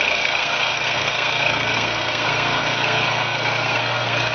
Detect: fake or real fake